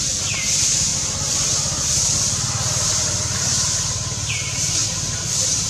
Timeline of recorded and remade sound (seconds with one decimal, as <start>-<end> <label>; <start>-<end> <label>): 0.0-5.7 recorded

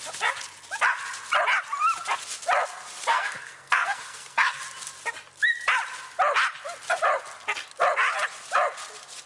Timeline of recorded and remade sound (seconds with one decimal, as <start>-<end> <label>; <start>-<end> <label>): 0.0-3.1 recorded; 3.1-4.6 remade; 4.6-9.3 recorded

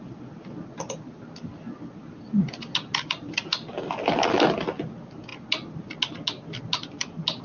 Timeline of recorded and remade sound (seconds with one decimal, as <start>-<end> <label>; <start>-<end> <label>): 0.0-7.4 recorded

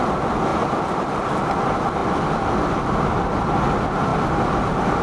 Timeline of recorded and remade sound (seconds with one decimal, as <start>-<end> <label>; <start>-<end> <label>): 0.0-5.0 recorded

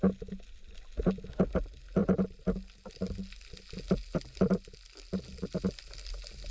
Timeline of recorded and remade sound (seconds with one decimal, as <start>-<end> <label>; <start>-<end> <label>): 0.0-6.5 recorded

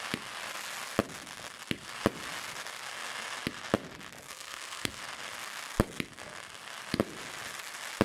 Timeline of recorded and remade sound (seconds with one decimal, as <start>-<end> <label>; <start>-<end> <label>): 0.0-4.3 recorded; 4.3-5.0 remade; 5.0-8.0 recorded

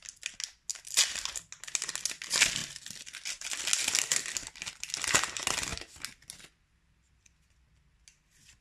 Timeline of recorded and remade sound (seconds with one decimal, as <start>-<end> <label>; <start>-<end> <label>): 0.0-8.6 recorded

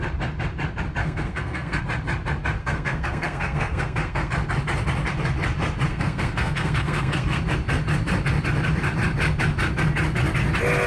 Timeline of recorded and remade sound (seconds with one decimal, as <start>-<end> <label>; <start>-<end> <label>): 0.0-1.0 recorded; 1.0-1.8 remade; 1.8-2.6 recorded; 2.6-4.3 remade; 4.3-5.9 recorded; 5.9-7.4 remade; 7.4-10.9 recorded